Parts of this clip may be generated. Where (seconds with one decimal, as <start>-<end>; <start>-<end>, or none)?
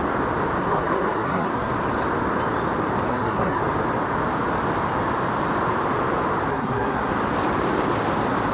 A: 0.6-1.7; 3.1-3.6; 6.5-7.1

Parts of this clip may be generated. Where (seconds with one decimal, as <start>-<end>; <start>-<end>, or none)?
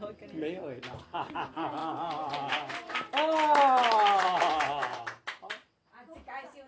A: 1.8-2.5; 4.9-5.9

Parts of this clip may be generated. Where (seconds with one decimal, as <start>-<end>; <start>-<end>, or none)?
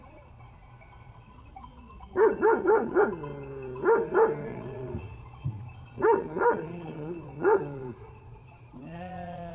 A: 0.0-3.0; 4.4-9.5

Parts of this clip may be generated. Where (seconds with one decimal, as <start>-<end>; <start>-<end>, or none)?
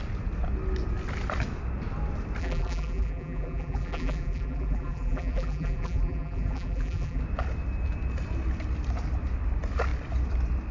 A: 2.4-7.2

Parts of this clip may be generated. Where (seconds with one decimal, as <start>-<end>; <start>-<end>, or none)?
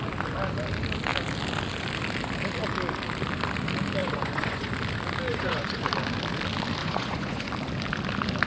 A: 4.0-4.7; 5.3-5.9; 6.8-7.5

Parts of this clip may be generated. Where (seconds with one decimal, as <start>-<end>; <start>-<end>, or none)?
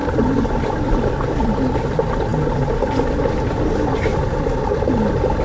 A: none